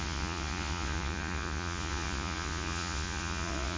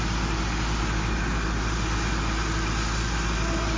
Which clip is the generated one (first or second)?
first